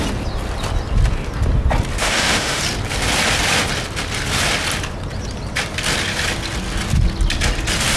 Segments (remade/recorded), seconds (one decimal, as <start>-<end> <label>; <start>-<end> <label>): 0.0-2.0 recorded; 2.0-2.6 remade; 2.6-8.0 recorded